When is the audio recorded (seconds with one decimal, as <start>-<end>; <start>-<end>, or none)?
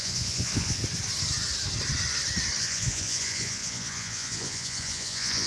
0.8-2.6